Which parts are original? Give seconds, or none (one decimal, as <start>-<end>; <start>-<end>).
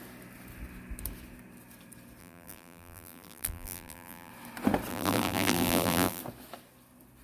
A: 0.0-2.2; 4.3-4.9; 6.2-7.2